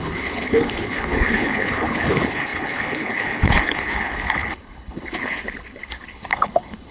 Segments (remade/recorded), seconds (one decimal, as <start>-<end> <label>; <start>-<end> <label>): 0.0-6.9 remade